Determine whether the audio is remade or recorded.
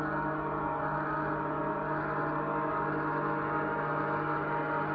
recorded